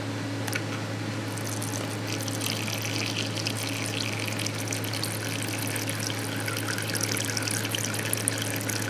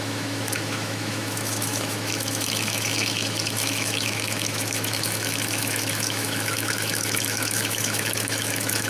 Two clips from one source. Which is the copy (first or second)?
second